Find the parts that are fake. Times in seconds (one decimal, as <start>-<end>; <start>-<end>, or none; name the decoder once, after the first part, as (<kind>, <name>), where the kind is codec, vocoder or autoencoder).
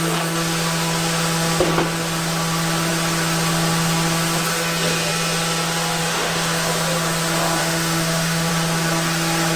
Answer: 6.0-6.7 (autoencoder, DAC-VAE); 7.6-8.5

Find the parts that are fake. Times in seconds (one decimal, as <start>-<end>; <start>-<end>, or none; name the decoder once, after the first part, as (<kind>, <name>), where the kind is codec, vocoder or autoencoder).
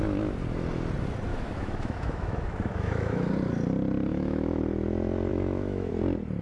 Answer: 1.3-3.3 (autoencoder, DAC-VAE); 4.1-4.6; 5.3-5.9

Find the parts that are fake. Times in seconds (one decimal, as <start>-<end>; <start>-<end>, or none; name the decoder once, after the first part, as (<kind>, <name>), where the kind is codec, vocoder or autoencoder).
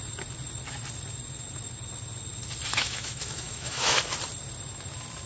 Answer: 2.7-4.0 (autoencoder, DAC-VAE)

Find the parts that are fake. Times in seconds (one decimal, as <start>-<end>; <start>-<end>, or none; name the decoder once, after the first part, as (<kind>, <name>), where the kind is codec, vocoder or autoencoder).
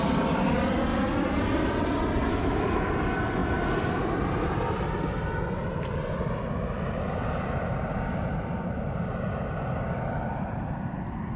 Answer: 2.3-2.9 (autoencoder, DAC-VAE)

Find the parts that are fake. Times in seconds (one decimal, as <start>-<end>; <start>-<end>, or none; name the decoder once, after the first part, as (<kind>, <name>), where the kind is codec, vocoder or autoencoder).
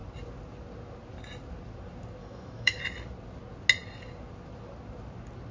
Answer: 2.2-2.8 (autoencoder, DAC-VAE)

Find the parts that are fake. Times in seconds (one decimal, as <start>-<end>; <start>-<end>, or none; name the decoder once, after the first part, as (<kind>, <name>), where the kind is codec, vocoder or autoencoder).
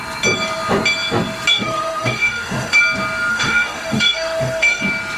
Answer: 1.5-2.8 (autoencoder, DAC-VAE); 3.3-4.8